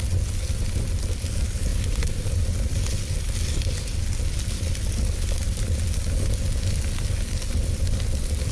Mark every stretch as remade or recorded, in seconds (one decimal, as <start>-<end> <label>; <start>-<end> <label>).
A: 0.0-8.5 recorded